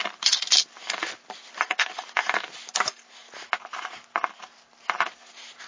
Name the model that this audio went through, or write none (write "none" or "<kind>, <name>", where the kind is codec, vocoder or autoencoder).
none